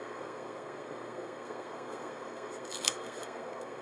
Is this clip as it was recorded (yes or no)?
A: no